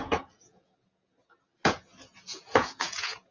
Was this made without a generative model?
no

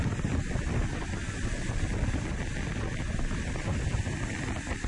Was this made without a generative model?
yes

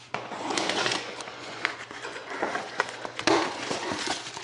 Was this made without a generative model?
no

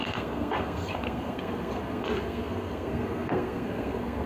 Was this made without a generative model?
no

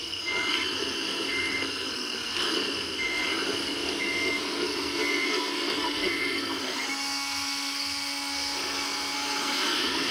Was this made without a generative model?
no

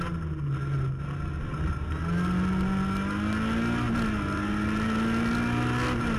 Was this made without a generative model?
yes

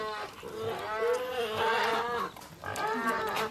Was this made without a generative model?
yes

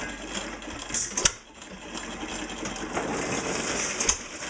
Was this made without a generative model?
yes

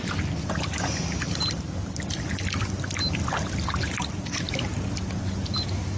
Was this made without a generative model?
yes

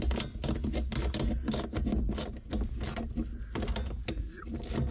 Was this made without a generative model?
yes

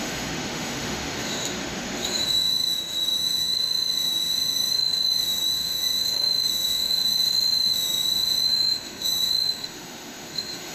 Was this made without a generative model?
no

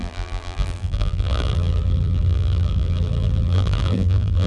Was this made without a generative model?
no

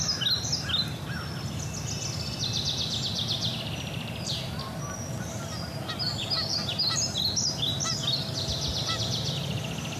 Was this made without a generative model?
yes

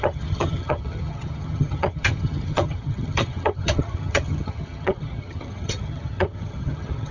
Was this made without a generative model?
no